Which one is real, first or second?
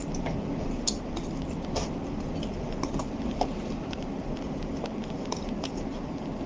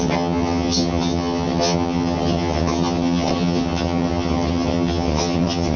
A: first